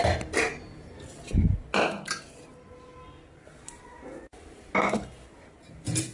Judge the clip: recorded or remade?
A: recorded